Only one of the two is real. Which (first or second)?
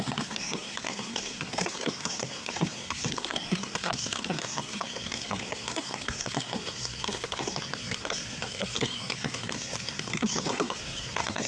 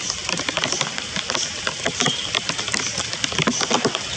second